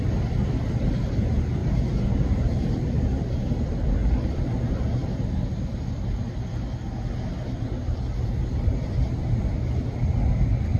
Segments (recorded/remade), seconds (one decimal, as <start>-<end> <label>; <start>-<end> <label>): 0.0-10.8 recorded